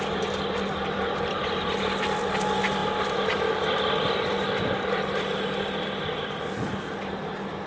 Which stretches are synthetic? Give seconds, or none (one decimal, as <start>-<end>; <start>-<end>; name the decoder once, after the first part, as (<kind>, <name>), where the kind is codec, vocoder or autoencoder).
none